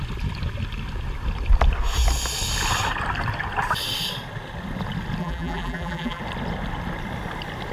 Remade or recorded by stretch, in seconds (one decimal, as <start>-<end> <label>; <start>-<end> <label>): 0.0-5.2 recorded; 5.2-6.2 remade; 6.2-7.7 recorded